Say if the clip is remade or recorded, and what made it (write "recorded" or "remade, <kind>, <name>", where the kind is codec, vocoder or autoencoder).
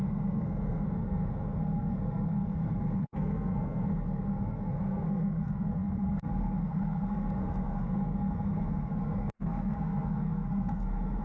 remade, codec, SNAC